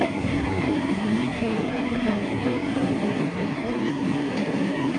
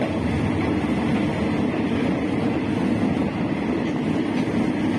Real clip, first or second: second